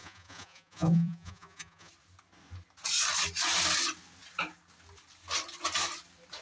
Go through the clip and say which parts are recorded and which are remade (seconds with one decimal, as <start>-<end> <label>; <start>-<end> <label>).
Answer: 0.0-1.9 remade; 1.9-6.4 recorded